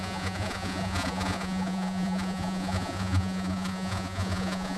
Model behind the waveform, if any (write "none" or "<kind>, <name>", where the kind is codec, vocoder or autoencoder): vocoder, Vocos